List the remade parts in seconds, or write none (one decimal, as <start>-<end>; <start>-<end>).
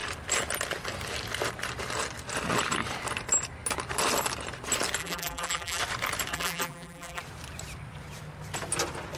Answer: 5.0-5.8; 6.3-7.2